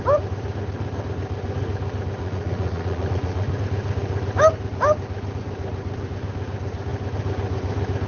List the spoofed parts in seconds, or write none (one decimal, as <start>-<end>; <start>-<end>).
2.2-3.5

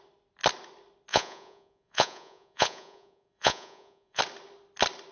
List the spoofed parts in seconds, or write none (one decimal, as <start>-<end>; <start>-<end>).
1.1-4.2

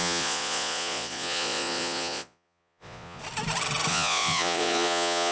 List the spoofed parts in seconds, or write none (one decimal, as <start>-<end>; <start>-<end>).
0.0-3.2; 3.9-5.3

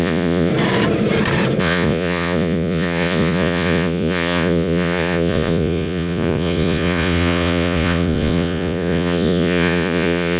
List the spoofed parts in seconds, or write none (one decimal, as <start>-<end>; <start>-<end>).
0.0-0.5; 1.6-10.4